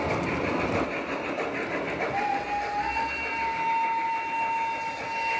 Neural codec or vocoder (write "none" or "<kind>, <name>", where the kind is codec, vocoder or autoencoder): none